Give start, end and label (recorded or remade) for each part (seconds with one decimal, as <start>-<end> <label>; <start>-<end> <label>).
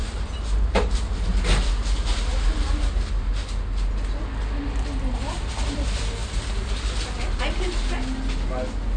0.0-6.2 recorded; 6.2-7.4 remade; 7.4-9.0 recorded